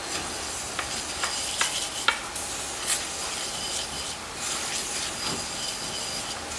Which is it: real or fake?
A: real